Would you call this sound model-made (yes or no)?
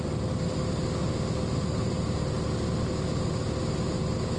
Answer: no